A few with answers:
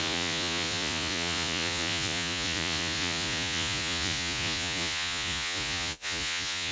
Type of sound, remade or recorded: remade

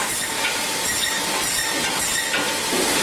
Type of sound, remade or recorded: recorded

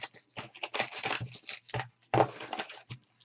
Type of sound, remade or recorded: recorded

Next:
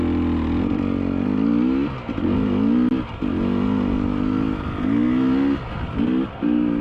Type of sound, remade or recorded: recorded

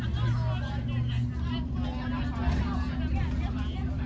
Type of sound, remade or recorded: recorded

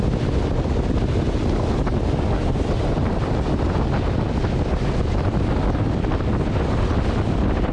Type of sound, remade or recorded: recorded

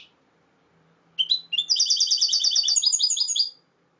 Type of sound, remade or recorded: recorded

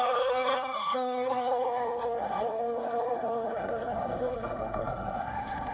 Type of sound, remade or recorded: remade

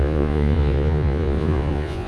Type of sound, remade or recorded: remade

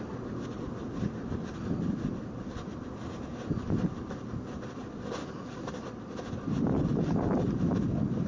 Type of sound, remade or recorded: recorded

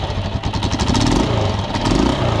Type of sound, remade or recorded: recorded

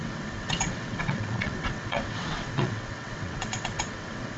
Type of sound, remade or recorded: remade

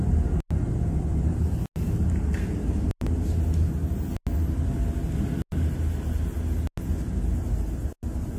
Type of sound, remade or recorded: recorded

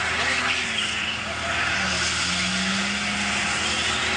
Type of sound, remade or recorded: recorded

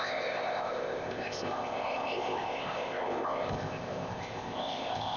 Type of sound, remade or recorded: remade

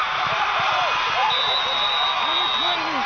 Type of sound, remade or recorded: recorded